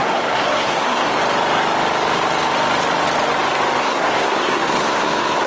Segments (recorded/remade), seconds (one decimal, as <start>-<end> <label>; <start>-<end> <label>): 0.0-1.2 remade; 1.2-3.8 recorded; 3.8-5.5 remade

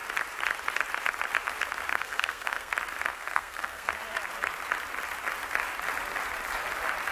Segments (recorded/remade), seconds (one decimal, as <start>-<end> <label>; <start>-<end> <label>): 0.0-1.9 recorded; 1.9-2.7 remade; 2.7-3.1 recorded; 3.1-3.9 remade; 3.9-7.1 recorded

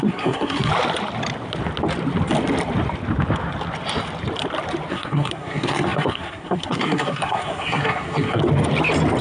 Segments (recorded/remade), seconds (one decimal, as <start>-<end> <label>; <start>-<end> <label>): 0.0-0.7 remade; 0.7-4.9 recorded; 4.9-8.4 remade; 8.4-9.2 recorded

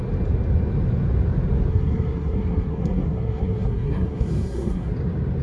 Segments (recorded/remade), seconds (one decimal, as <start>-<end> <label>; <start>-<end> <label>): 0.0-1.7 recorded; 1.7-4.9 remade; 4.9-5.4 recorded